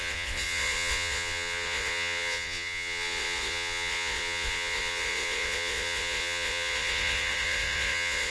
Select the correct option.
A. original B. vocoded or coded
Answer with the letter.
B